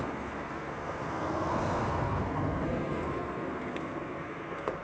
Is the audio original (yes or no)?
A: no